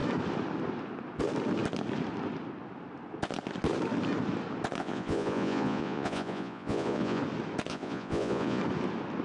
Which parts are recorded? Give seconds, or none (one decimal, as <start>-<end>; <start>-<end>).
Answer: 0.0-4.8; 7.2-7.7; 8.6-9.2